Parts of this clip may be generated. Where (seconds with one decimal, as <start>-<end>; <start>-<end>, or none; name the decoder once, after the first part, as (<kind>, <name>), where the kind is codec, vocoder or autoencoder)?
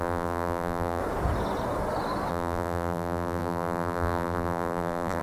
0.0-1.0 (vocoder, BigVGAN v2); 2.3-5.2